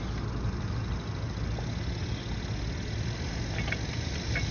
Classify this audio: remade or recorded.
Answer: recorded